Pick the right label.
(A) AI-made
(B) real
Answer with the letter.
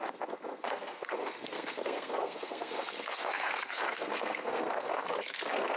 A